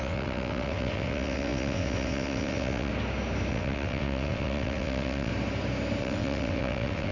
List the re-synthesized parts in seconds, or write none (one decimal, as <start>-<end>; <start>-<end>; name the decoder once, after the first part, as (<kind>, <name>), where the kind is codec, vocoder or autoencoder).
0.0-2.9 (vocoder, WaveNeXt); 3.5-5.3; 6.0-7.1